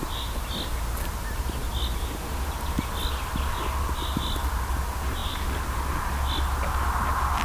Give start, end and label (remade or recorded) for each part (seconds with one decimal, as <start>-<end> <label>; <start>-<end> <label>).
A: 0.0-7.4 recorded